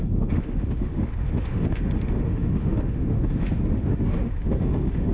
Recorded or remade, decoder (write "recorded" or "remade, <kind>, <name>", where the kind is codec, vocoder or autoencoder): remade, autoencoder, DAC-VAE